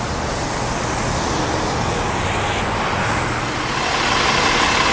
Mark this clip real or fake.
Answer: real